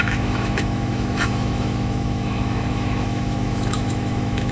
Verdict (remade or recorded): remade